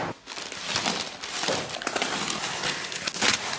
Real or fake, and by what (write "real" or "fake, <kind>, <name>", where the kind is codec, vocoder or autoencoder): real